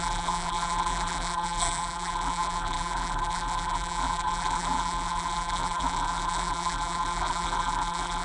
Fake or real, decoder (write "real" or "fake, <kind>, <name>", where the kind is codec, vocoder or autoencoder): fake, vocoder, BigVGAN v2